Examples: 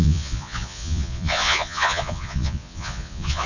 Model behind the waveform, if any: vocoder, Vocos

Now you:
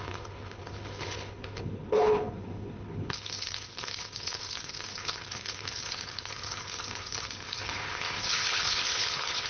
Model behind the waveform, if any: codec, HILCodec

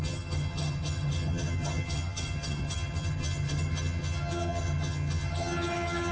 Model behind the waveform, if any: vocoder, HiFi-GAN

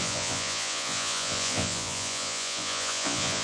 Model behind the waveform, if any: vocoder, Vocos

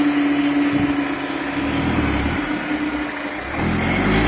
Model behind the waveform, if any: none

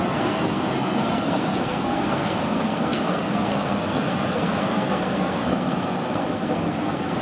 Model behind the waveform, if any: codec, SNAC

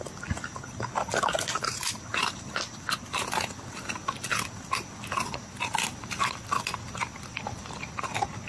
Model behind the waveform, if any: none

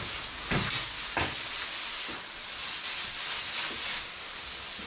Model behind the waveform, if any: none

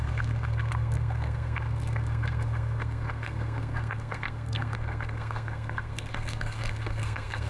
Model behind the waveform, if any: codec, SNAC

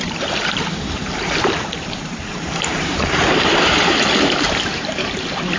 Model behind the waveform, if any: vocoder, BigVGAN v2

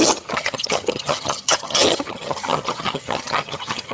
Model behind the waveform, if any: vocoder, HiFi-GAN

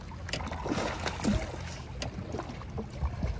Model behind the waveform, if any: none